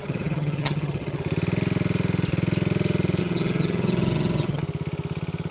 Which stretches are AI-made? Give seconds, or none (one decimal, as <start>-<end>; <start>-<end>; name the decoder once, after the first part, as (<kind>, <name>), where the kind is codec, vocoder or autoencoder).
0.0-1.2 (vocoder, HiFi-GAN); 3.2-4.6